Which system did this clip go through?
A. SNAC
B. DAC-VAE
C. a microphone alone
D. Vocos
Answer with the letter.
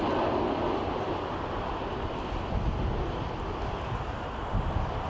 C